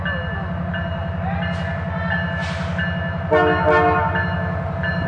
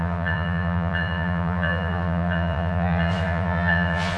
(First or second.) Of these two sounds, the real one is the first